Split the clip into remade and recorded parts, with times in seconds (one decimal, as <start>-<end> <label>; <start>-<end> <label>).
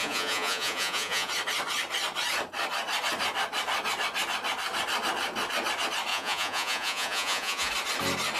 0.0-1.3 remade; 1.3-6.1 recorded; 6.1-7.7 remade; 7.7-8.4 recorded